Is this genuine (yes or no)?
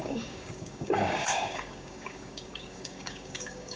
no